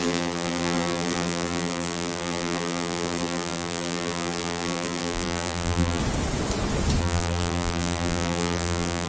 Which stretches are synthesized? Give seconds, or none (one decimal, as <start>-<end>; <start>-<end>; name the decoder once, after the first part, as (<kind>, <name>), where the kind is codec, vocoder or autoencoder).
0.0-6.0 (vocoder, BigVGAN v2); 7.0-9.1